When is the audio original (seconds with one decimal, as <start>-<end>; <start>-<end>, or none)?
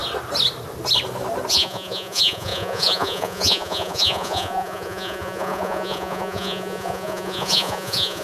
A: 0.0-1.5